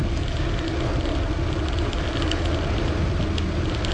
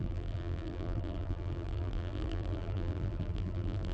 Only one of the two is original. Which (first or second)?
first